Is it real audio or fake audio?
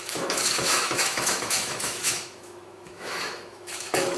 fake